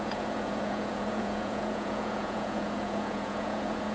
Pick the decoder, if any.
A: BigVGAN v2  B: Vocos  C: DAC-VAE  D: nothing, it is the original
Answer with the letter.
B